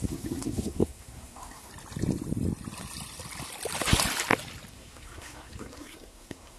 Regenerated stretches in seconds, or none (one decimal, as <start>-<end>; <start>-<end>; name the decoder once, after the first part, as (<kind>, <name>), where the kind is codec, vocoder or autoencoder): 0.0-1.7 (codec, SNAC); 4.7-6.6